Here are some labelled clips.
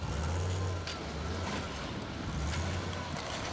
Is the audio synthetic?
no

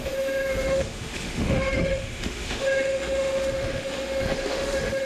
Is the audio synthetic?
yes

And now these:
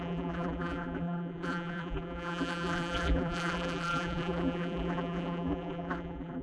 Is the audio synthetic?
yes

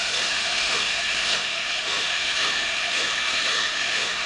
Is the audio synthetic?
yes